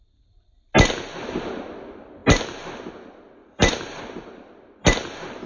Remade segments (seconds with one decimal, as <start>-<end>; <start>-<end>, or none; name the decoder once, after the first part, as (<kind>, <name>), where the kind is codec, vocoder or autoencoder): 3.4-4.0 (vocoder, BigVGAN v2)